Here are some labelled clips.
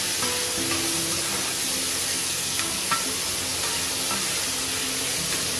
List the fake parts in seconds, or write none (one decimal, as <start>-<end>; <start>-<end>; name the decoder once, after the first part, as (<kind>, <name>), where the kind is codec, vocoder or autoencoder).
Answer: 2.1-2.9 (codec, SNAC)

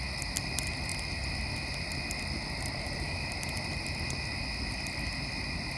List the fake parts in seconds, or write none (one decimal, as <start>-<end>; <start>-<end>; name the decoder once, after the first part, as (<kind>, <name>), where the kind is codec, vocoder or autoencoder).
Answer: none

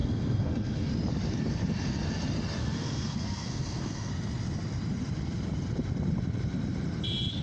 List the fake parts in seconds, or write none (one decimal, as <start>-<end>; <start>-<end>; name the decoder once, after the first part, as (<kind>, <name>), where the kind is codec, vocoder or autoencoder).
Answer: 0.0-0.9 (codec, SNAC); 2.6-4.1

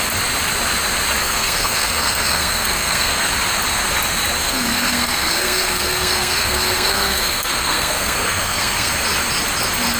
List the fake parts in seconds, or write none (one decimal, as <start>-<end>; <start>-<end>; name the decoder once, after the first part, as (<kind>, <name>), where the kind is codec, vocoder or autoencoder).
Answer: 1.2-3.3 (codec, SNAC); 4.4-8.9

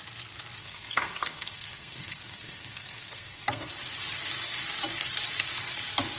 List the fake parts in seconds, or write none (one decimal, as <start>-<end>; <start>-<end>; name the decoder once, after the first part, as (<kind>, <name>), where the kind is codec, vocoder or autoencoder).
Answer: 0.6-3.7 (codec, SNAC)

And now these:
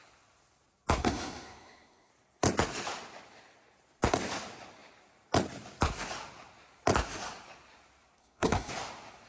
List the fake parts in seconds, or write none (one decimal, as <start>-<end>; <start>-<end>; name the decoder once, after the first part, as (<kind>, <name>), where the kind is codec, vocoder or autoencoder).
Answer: 1.0-2.1 (codec, SNAC); 8.2-8.7